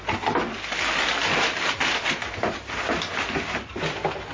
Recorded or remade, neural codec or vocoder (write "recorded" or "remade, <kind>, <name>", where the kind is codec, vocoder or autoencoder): recorded